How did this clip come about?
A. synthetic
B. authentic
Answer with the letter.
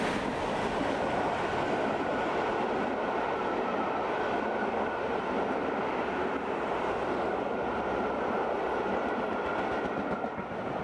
B